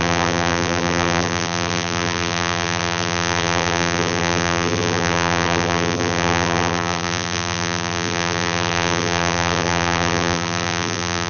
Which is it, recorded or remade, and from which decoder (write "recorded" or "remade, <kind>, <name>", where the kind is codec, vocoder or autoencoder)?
remade, vocoder, BigVGAN v2